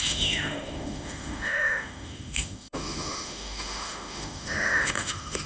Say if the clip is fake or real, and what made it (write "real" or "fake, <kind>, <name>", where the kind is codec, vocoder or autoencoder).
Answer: fake, autoencoder, DAC-VAE